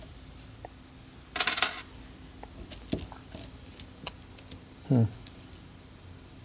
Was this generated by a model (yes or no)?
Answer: no